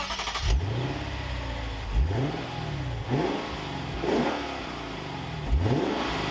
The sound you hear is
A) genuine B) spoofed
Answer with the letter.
A